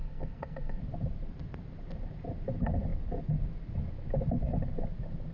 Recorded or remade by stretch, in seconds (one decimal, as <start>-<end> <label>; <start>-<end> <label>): 0.0-0.8 remade; 0.8-5.3 recorded